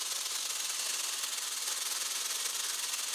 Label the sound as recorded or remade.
recorded